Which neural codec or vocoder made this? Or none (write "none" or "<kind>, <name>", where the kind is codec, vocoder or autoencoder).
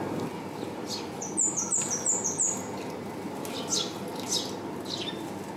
none